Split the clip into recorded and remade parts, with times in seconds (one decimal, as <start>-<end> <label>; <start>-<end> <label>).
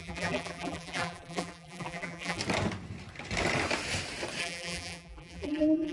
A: 0.0-2.4 remade; 2.4-4.4 recorded; 4.4-5.9 remade